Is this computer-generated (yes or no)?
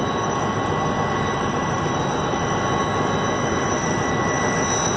no